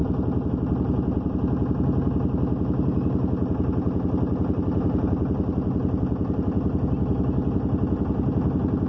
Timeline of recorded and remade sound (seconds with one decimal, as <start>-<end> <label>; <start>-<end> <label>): 0.0-8.9 recorded